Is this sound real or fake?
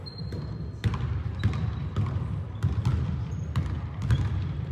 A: real